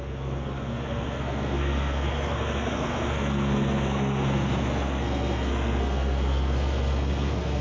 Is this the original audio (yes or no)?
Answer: no